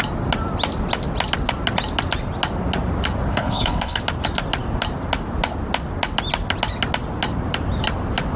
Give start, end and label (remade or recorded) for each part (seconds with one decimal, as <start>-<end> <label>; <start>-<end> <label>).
0.0-3.3 recorded; 3.3-4.0 remade; 4.0-8.4 recorded